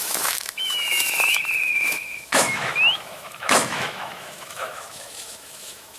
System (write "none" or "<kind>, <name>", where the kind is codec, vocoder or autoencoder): autoencoder, DAC-VAE